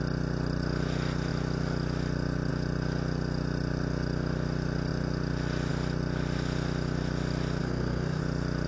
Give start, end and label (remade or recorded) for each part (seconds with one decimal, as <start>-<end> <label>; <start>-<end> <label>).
0.0-7.6 recorded; 7.6-8.2 remade; 8.2-8.7 recorded